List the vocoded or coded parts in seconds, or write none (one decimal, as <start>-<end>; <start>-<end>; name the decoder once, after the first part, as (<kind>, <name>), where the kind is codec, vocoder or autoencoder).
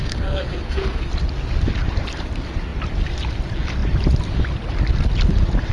0.0-1.1 (codec, SNAC)